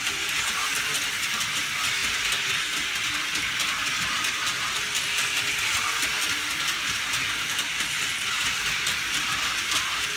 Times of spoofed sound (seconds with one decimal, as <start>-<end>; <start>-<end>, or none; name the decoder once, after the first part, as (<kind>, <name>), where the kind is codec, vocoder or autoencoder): none